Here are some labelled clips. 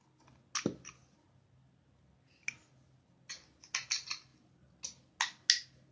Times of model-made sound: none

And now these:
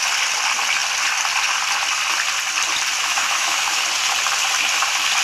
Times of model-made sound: 3.0-3.8 (autoencoder, DAC-VAE)

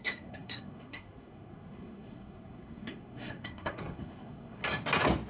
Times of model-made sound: 0.0-4.6 (codec, SNAC)

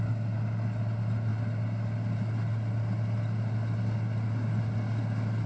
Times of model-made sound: none

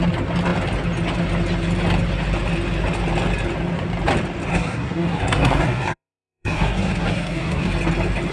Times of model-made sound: 4.5-7.7 (codec, SNAC)

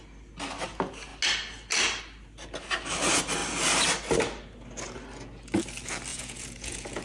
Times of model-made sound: 6.1-7.0 (vocoder, Vocos)

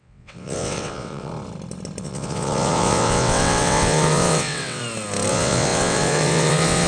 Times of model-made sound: 0.0-1.3 (vocoder, WaveNeXt); 2.0-4.8; 5.3-6.9

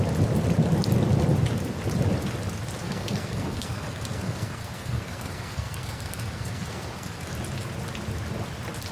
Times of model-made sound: 2.8-7.3 (codec, SNAC)